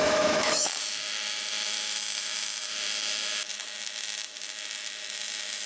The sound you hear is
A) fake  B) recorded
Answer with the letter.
A